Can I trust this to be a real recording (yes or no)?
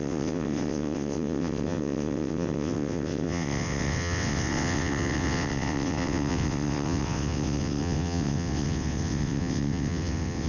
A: no